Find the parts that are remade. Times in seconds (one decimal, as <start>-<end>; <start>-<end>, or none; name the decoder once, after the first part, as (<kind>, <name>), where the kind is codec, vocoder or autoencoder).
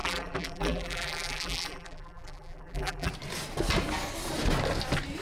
0.0-3.1 (vocoder, BigVGAN v2)